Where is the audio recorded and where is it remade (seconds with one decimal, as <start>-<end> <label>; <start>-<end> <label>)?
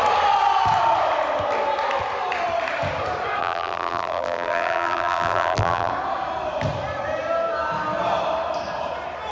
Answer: 0.0-3.4 recorded; 3.4-5.9 remade; 5.9-9.3 recorded